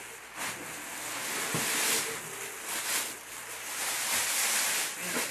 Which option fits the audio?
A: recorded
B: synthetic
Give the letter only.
A